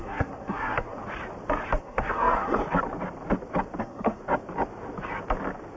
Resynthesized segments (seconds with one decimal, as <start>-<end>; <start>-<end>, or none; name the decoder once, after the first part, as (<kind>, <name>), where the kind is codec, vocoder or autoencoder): 0.0-1.0 (codec, SNAC); 1.8-2.6; 3.8-4.2